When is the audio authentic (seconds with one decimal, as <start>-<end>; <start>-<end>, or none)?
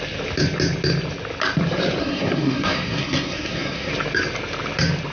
0.0-2.0; 3.9-5.1